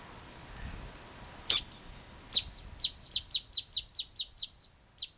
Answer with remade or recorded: recorded